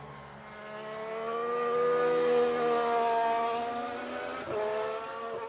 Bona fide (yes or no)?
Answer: yes